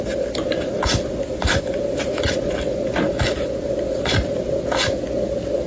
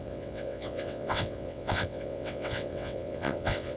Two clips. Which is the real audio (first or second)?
first